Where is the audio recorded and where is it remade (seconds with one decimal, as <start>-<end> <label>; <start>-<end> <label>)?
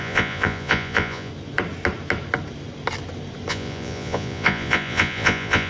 0.0-1.3 remade; 1.3-3.5 recorded; 3.5-5.7 remade